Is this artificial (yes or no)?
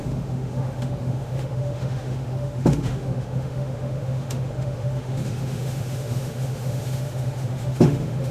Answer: yes